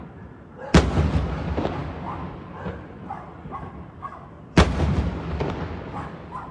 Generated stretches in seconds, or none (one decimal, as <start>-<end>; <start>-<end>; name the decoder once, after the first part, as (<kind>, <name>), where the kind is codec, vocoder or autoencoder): none